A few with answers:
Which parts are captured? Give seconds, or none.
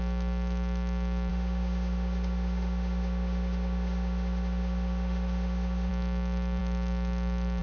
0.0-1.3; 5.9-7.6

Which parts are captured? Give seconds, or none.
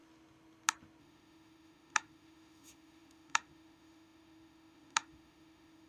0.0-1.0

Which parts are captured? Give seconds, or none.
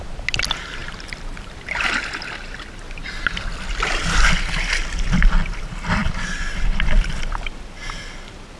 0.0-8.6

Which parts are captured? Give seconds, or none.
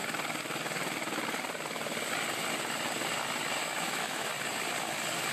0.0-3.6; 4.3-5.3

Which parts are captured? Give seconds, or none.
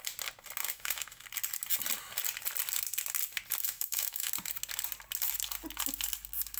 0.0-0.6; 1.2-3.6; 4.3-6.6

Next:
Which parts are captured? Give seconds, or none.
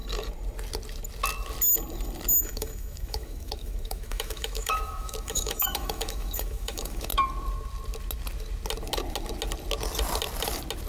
0.0-2.4; 7.1-10.9